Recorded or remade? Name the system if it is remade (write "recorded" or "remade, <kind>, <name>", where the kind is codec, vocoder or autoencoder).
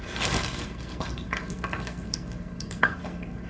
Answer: remade, codec, SNAC